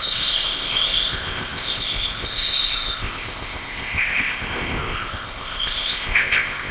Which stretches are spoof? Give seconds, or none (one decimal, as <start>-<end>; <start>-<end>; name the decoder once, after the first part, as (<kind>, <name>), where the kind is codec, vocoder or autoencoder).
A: 0.0-6.7 (codec, ZipCodec)